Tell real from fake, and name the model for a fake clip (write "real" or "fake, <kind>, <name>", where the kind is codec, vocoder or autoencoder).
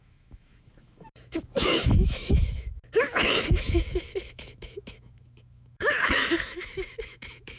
fake, autoencoder, DAC-VAE